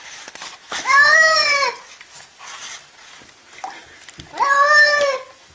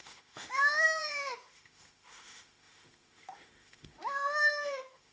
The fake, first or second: second